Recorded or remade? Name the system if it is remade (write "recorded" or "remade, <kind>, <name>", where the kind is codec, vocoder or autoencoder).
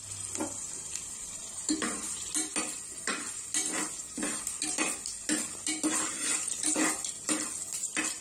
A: recorded